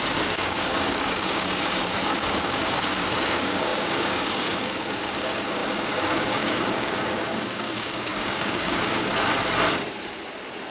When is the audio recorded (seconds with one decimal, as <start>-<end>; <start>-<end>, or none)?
9.1-10.7